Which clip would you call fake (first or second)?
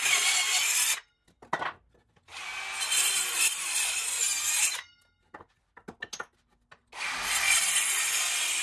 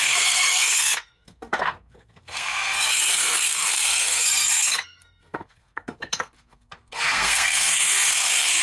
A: second